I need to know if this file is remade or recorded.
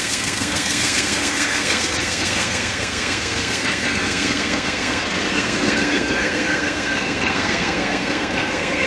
remade